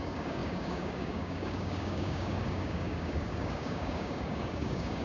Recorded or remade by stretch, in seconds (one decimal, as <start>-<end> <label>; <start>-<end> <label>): 0.0-5.0 remade